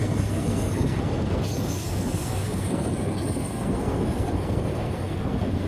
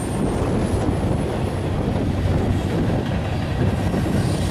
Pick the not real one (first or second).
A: first